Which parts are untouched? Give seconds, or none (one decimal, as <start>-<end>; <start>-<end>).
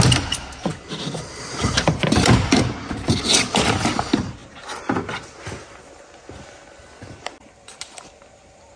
4.4-6.7